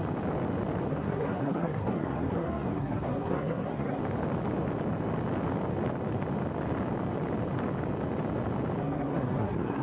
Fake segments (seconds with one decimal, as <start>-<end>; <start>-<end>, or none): 0.9-4.0; 8.8-9.8